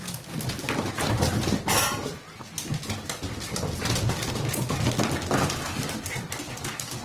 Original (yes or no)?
yes